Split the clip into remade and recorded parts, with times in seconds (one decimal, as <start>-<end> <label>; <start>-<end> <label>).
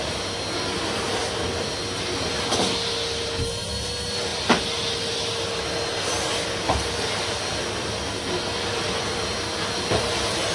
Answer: 0.0-10.5 recorded